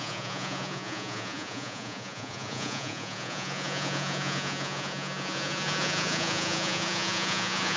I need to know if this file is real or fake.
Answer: fake